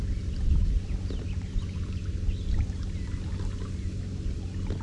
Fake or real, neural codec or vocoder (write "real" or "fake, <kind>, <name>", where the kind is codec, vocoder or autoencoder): real